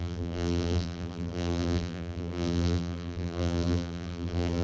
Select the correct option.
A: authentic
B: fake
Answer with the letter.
B